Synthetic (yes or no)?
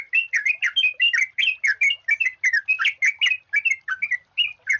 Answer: no